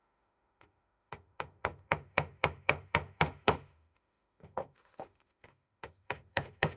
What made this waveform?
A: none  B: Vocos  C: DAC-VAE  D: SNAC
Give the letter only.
C